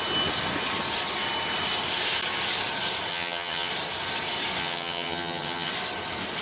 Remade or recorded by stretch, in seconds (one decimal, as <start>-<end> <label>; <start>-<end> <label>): 0.0-3.1 recorded; 3.1-3.7 remade; 3.7-4.6 recorded; 4.6-5.7 remade; 5.7-6.4 recorded